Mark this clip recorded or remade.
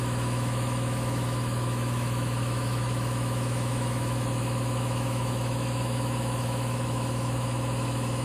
remade